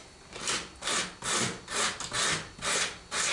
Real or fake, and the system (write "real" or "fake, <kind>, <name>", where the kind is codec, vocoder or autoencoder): real